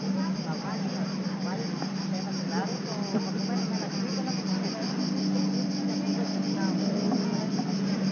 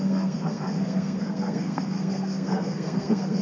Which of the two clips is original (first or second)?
first